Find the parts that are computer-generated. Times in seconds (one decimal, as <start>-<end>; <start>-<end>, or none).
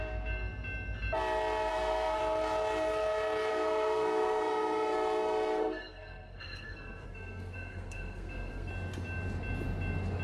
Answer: 1.7-2.2; 3.5-8.7